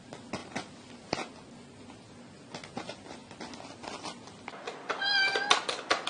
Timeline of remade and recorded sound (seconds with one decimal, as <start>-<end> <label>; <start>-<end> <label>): 0.0-6.1 recorded